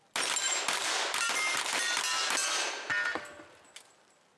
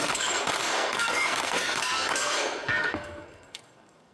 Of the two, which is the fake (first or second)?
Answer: second